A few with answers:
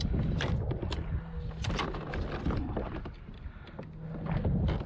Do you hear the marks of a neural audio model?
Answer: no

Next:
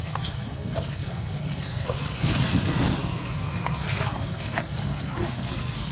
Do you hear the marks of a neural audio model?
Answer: yes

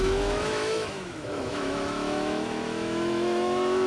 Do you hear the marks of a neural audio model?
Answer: yes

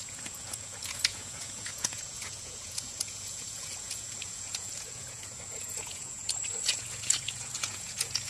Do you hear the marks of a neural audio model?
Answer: yes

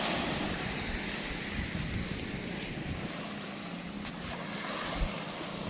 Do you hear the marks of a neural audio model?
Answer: no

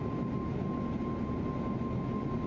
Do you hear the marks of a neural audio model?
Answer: no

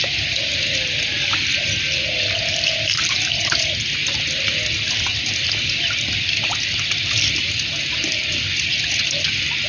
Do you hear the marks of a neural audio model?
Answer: no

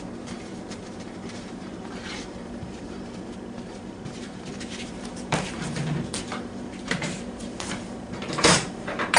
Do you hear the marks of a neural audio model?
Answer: yes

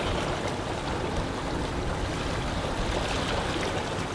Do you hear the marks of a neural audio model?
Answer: no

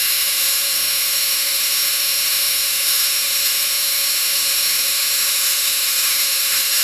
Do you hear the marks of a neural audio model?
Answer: yes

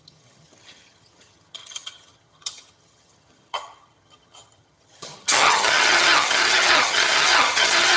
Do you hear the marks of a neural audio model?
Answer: yes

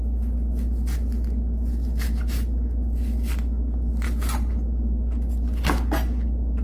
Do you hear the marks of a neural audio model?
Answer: no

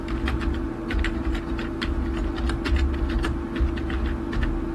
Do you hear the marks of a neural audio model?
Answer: no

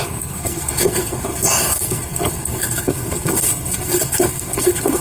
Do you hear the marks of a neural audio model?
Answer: yes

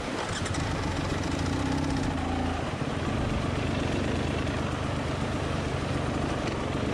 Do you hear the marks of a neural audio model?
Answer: no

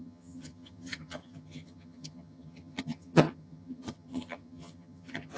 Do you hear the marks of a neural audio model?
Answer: yes